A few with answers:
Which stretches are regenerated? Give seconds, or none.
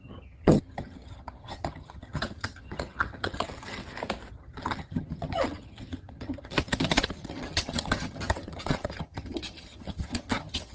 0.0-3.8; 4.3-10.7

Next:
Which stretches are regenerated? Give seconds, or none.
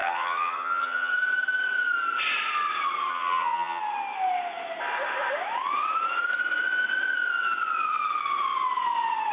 0.0-1.1; 3.1-3.8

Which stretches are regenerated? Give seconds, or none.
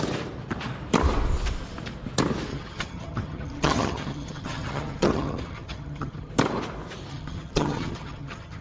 2.5-6.3; 7.1-8.6